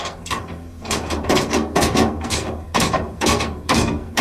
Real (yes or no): no